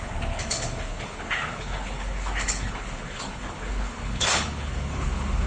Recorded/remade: remade